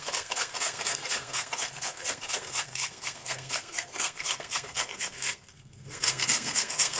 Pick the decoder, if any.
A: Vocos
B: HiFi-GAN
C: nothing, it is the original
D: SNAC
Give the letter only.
D